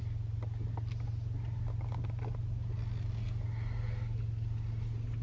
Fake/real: real